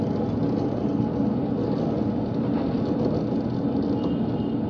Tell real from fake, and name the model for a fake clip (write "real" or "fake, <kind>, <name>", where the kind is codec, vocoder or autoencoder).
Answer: real